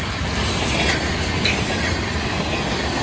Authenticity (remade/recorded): recorded